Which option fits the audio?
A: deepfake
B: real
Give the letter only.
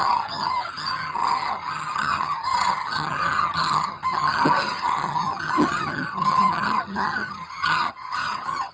A